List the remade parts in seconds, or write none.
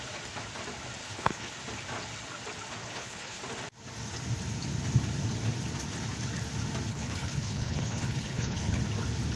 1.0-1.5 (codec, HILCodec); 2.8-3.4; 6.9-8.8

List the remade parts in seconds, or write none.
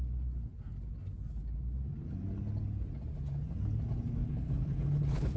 4.2-5.4 (codec, HILCodec)